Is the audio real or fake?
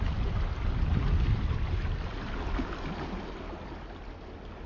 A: real